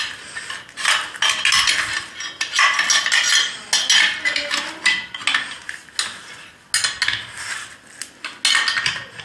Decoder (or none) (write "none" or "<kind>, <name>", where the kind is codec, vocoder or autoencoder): none